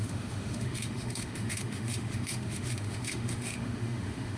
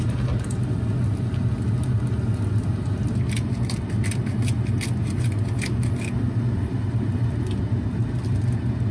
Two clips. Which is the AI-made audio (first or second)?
first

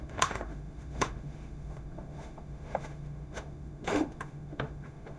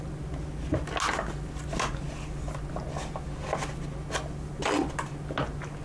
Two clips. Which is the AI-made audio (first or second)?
first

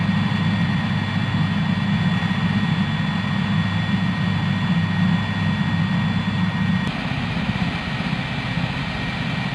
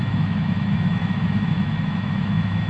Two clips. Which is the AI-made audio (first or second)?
second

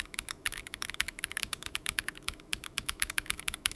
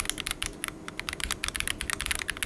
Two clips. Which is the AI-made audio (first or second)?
first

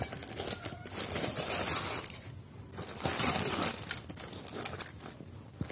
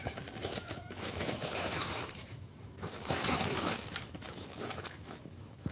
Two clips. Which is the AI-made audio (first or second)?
second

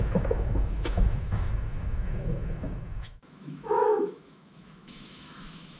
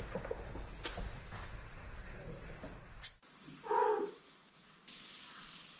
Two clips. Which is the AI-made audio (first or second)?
first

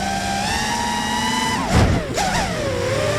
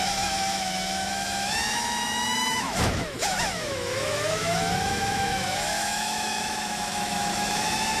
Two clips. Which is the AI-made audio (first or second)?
second